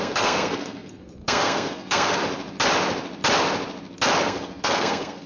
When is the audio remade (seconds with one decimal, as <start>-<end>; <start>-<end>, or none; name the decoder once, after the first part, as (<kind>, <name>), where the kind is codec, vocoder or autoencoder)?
0.0-2.2 (codec, SNAC); 4.2-5.3